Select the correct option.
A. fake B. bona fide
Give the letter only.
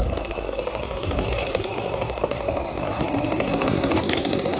A